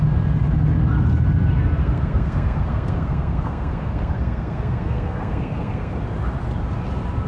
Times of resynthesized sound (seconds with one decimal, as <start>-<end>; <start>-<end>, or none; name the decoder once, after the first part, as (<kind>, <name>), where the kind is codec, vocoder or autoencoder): 1.8-5.9 (codec, SNAC)